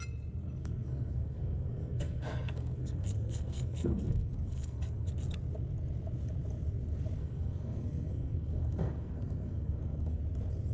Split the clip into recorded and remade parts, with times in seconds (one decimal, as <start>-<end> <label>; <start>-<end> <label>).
0.0-0.6 recorded; 0.6-5.1 remade; 5.1-7.2 recorded; 7.2-10.2 remade; 10.2-10.7 recorded